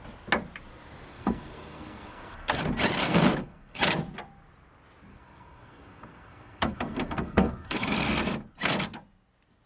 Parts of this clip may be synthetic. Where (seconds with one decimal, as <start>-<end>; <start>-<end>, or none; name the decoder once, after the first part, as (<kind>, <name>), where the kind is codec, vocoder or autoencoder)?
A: 1.1-2.6 (codec, SNAC); 3.0-3.8; 5.1-8.2